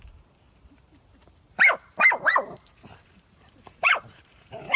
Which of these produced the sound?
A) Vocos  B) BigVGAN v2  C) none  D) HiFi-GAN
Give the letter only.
B